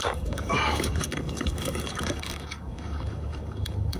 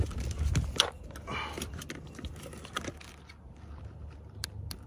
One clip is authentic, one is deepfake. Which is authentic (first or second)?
second